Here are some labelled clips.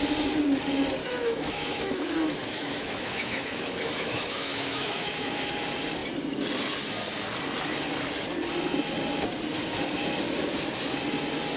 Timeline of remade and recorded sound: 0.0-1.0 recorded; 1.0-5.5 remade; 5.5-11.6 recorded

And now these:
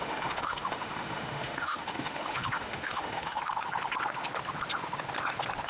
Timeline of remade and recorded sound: 0.0-3.4 remade; 3.4-5.7 recorded